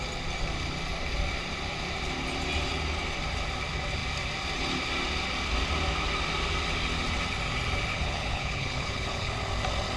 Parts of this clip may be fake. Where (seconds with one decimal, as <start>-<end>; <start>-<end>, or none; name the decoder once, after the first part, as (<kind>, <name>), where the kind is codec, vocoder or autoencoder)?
7.9-9.3 (codec, HILCodec)